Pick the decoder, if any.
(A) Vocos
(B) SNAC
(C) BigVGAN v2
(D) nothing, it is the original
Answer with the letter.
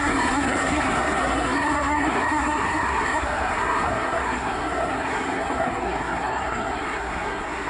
B